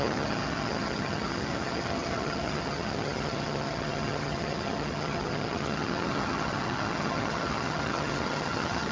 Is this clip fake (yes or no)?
yes